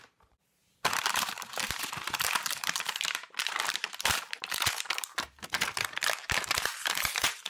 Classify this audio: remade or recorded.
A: remade